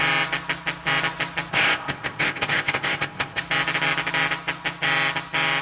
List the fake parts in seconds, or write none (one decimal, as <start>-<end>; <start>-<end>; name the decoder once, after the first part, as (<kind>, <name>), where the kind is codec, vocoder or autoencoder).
1.5-3.4 (codec, ZipCodec)